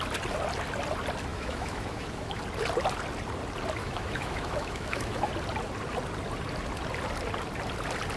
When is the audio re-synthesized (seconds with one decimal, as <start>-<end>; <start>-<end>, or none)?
1.3-2.4; 3.8-5.3